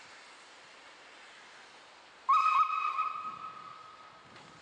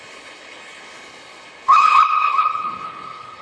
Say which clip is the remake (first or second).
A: second